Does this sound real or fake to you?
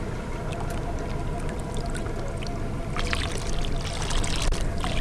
real